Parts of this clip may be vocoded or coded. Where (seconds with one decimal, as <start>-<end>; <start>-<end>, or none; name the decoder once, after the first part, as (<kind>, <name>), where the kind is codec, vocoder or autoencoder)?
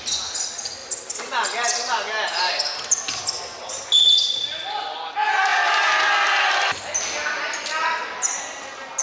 none